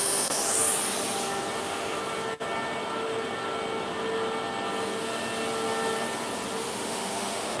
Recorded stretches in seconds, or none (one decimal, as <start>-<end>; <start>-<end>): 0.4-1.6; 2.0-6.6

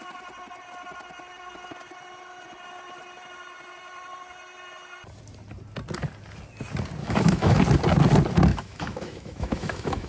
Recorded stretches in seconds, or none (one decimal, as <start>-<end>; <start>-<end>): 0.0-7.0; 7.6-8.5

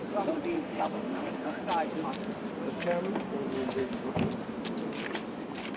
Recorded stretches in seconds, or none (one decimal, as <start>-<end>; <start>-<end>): 0.0-0.5; 1.6-3.5; 4.1-5.8